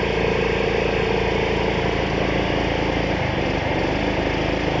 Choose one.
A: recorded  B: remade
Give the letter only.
A